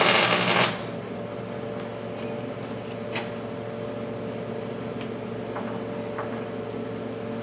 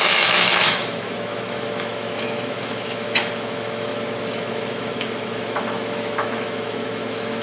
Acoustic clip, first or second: first